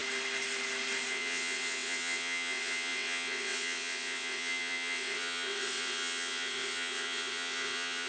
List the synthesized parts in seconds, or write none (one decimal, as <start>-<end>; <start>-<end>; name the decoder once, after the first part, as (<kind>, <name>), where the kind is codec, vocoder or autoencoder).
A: 1.1-8.1 (vocoder, WaveNeXt)

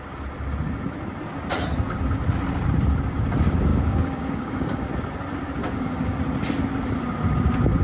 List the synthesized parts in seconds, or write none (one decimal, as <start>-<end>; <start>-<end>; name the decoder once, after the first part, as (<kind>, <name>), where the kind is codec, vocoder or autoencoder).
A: 3.7-4.9 (codec, DAC); 5.6-6.2

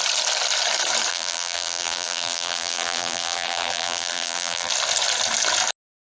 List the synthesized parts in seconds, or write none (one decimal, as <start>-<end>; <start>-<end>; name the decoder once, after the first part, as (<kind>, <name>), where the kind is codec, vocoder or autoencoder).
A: 1.1-4.7 (vocoder, BigVGAN v2)

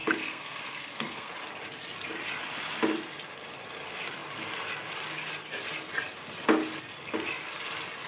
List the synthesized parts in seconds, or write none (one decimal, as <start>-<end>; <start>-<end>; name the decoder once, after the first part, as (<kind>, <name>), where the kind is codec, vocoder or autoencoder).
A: 0.0-1.3 (codec, SNAC)